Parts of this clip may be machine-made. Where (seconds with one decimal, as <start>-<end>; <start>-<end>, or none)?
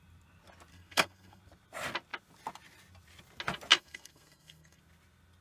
0.7-1.4; 3.7-4.8